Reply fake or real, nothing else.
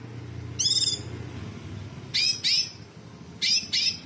real